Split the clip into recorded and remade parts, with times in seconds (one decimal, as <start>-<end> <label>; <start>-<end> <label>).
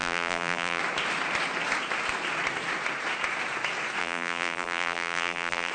0.0-0.8 remade; 0.8-4.0 recorded; 4.0-5.7 remade